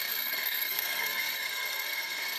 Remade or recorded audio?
remade